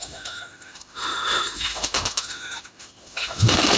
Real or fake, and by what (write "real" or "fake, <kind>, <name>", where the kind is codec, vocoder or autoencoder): fake, autoencoder, DAC-VAE